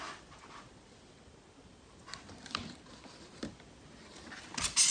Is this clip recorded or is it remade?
recorded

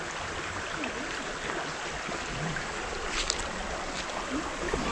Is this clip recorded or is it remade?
recorded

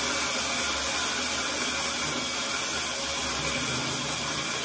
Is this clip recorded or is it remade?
recorded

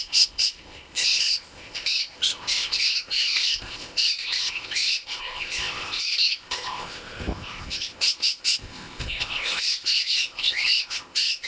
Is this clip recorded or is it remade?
remade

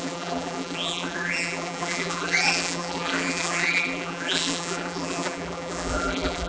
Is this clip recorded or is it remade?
remade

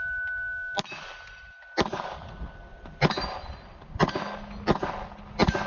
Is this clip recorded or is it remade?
recorded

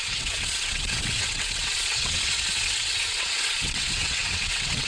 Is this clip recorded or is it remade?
remade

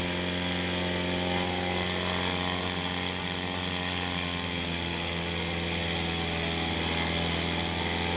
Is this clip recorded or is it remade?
recorded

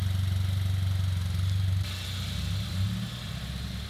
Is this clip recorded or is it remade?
recorded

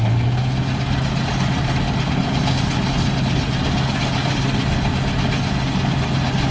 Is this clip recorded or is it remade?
recorded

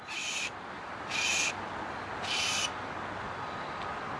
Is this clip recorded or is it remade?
recorded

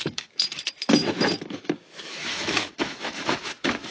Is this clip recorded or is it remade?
remade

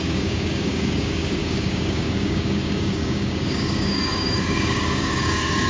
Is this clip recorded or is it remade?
remade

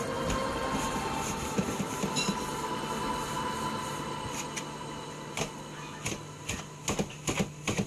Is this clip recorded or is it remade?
recorded